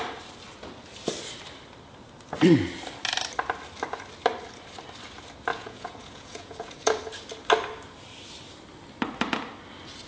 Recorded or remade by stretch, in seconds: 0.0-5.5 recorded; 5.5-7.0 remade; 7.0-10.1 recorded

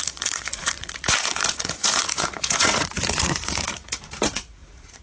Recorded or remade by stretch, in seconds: 0.0-5.0 remade